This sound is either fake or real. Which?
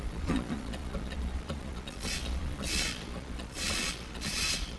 fake